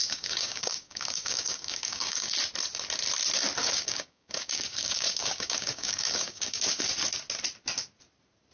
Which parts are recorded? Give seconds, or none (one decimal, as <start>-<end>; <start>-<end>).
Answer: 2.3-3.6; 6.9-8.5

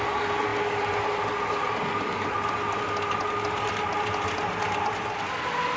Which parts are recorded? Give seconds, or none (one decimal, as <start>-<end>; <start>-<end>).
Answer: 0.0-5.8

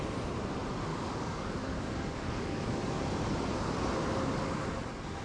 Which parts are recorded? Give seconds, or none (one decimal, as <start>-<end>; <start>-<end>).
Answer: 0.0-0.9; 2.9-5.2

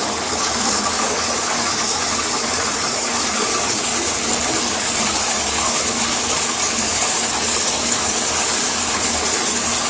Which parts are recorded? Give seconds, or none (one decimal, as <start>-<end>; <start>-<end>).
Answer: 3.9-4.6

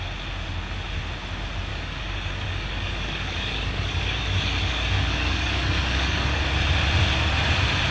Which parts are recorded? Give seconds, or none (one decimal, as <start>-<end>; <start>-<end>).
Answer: 0.0-1.7; 6.4-7.9

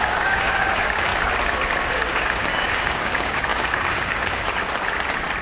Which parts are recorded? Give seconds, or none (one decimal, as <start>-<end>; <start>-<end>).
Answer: 1.1-1.9; 4.6-5.4